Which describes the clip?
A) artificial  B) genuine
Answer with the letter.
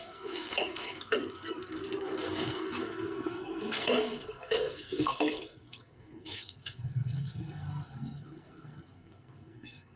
A